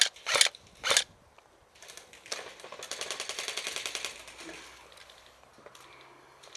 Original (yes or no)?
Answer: yes